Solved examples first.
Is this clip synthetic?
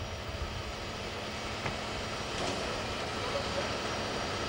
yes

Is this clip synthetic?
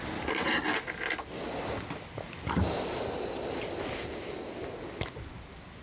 no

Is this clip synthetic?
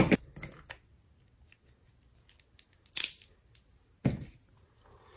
no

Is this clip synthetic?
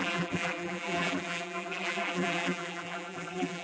yes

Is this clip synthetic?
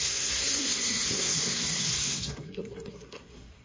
yes